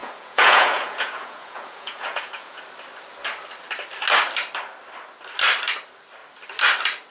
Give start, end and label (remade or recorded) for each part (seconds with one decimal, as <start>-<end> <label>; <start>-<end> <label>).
0.0-2.6 remade; 2.6-7.1 recorded